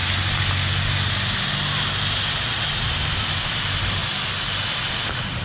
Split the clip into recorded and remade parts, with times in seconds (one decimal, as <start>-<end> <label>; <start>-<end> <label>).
0.0-3.0 recorded; 3.0-4.0 remade; 4.0-4.9 recorded; 4.9-5.4 remade